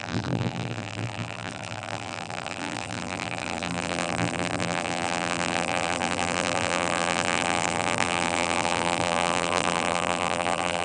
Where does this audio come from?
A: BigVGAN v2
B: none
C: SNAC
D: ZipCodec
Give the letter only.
A